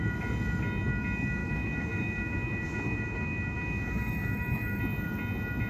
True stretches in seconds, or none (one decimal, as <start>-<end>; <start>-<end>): 0.0-1.4; 4.8-5.7